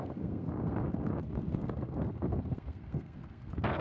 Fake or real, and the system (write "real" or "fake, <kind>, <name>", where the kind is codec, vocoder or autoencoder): fake, codec, SNAC